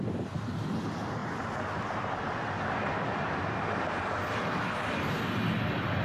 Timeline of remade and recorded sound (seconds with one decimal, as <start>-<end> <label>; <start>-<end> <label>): 0.0-6.0 recorded